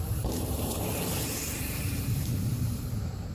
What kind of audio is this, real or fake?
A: fake